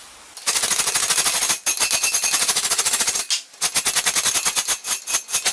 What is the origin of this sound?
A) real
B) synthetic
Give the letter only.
A